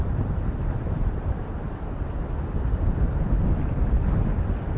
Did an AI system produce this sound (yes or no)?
no